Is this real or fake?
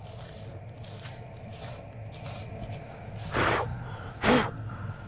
real